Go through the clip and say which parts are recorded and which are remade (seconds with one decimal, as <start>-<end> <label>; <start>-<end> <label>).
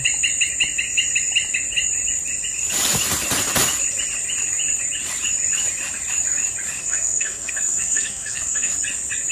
0.0-6.8 recorded; 6.8-8.7 remade; 8.7-9.3 recorded